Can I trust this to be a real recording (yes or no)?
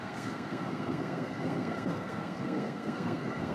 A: no